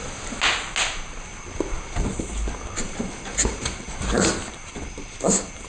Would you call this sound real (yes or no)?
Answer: yes